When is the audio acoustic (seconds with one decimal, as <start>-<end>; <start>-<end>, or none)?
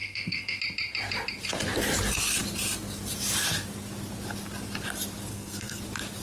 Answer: 0.6-5.3; 5.8-6.2